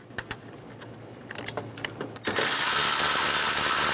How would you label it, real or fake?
real